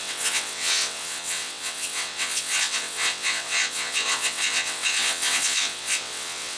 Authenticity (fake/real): fake